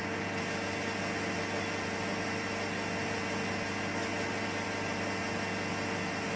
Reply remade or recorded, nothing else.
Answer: recorded